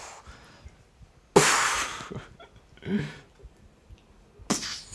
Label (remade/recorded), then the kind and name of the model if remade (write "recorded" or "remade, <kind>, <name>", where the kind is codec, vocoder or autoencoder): recorded